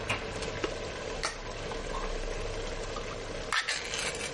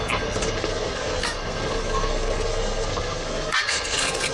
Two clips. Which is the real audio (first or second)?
first